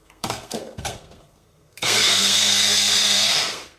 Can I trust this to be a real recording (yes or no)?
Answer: no